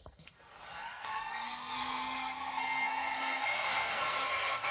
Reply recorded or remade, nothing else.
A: remade